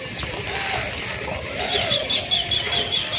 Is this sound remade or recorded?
recorded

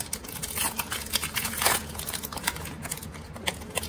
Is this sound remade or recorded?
remade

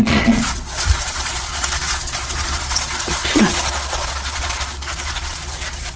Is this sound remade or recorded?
remade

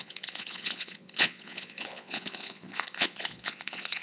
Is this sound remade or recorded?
remade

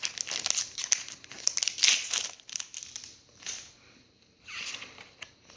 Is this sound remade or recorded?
recorded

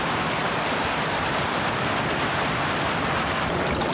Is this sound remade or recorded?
recorded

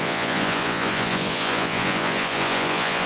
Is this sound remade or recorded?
remade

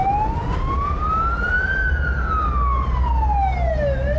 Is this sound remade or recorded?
recorded